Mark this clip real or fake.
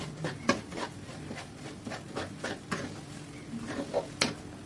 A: real